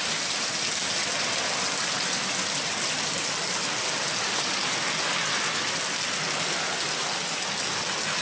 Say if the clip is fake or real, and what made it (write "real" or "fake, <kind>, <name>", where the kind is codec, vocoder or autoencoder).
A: real